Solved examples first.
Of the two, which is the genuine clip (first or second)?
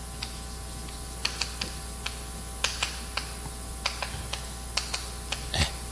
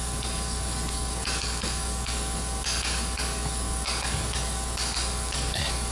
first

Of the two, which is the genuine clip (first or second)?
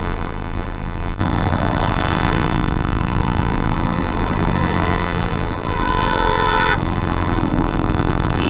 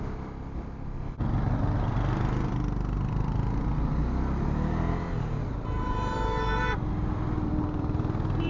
second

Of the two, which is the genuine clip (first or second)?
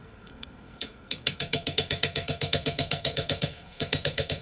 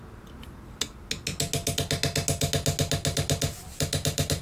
second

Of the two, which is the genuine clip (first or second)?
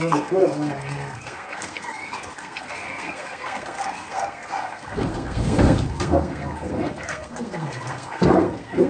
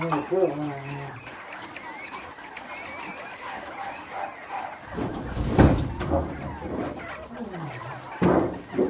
second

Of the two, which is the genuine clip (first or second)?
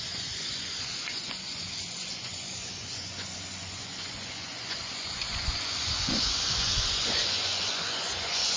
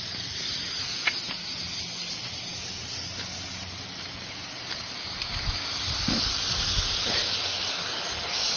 second